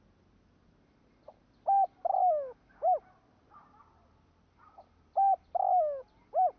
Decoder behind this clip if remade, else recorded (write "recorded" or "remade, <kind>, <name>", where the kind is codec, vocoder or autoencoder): recorded